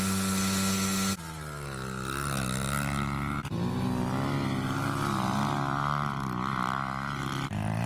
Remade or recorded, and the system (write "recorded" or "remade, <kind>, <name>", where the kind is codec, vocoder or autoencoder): recorded